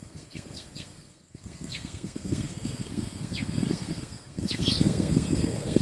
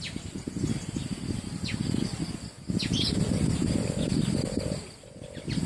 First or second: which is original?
second